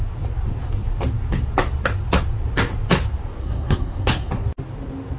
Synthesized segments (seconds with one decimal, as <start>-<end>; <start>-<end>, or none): 3.4-4.3